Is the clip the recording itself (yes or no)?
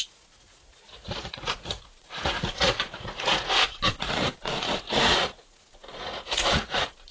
no